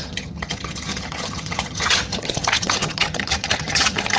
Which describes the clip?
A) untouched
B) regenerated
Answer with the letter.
B